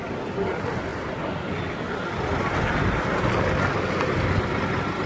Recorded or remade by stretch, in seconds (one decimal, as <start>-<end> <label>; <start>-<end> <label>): 0.0-5.1 recorded